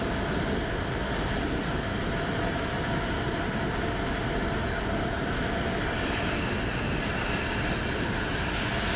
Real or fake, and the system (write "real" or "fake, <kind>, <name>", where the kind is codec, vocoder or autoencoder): real